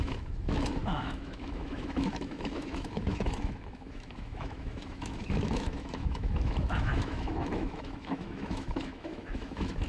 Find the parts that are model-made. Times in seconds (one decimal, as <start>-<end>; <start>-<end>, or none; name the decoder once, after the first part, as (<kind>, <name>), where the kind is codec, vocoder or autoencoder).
0.0-9.9 (autoencoder, DAC-VAE)